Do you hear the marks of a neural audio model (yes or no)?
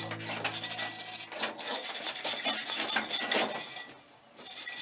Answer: no